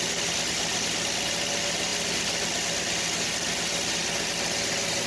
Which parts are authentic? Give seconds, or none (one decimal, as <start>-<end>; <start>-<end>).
0.0-5.1